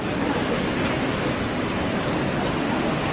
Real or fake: real